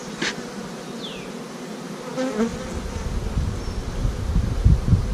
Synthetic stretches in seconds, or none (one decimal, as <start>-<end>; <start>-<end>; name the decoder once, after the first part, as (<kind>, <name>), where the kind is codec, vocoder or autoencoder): none